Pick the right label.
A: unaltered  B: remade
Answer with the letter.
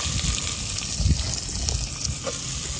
A